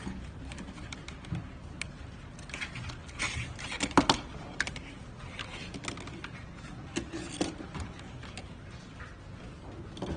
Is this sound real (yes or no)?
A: yes